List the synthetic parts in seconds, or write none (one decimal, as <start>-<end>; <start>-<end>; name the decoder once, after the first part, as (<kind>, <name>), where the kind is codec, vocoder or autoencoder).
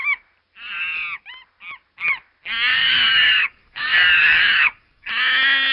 2.7-5.1 (codec, DAC)